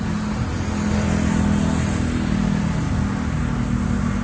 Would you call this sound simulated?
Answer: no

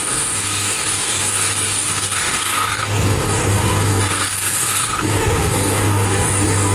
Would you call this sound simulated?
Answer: yes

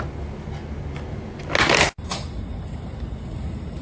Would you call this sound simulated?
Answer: no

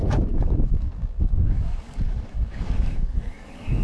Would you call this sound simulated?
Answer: yes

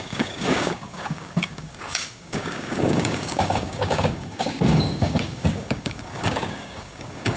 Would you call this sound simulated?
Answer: yes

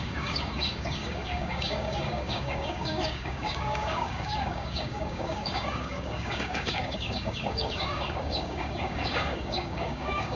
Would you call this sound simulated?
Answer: yes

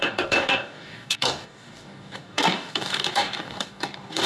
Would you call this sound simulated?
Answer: yes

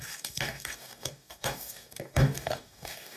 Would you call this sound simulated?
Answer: yes